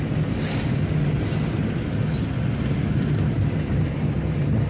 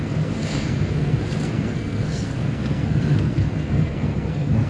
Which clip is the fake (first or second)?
second